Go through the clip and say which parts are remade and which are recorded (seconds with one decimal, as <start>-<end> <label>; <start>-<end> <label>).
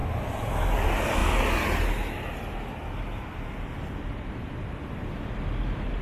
0.0-6.0 recorded